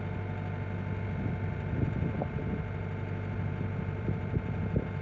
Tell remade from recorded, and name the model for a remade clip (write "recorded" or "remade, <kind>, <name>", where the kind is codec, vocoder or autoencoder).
recorded